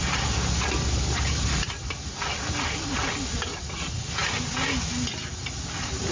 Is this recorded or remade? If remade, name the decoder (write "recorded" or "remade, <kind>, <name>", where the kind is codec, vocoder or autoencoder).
recorded